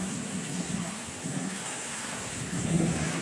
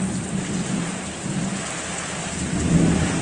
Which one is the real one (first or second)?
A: second